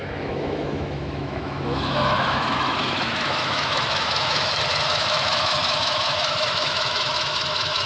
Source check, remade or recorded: remade